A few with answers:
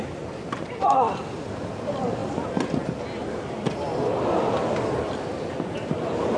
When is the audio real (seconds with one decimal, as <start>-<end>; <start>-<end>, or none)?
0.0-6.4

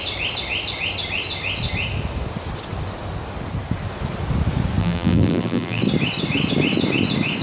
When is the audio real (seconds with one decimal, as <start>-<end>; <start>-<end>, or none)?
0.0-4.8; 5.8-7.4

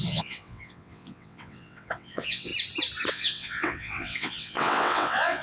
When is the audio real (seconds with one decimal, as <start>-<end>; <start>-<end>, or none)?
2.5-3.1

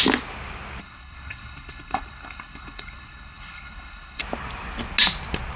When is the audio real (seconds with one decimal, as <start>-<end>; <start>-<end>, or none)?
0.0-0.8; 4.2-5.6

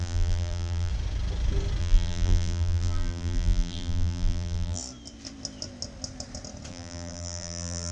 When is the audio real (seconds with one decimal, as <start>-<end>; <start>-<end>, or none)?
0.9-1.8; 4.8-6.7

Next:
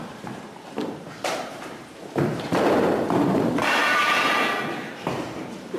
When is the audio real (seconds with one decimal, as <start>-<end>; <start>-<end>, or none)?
2.0-3.2; 3.8-4.9

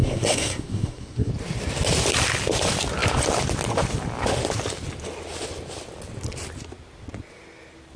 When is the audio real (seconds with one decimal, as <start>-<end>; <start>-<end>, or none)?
1.3-8.0

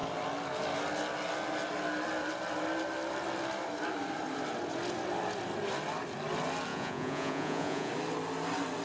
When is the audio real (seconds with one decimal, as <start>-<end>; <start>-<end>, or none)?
0.0-6.7; 7.9-8.8